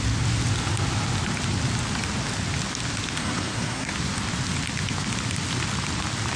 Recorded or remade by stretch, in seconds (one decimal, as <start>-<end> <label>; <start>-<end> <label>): 0.0-3.2 recorded; 3.2-3.9 remade; 3.9-6.4 recorded